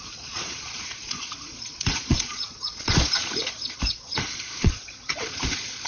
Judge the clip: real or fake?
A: fake